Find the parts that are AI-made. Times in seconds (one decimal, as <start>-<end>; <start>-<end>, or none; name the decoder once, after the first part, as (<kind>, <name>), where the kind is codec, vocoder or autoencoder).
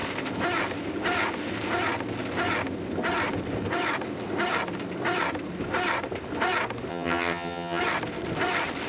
6.9-7.8 (vocoder, HiFi-GAN)